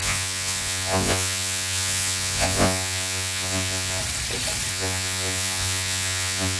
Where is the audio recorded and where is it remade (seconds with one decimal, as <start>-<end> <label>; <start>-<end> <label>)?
0.0-4.0 remade; 4.0-4.7 recorded; 4.7-6.6 remade